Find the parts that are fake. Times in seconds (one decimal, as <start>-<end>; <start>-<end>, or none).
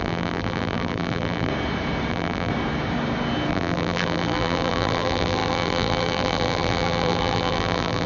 0.0-1.5; 2.1-2.5; 3.5-8.1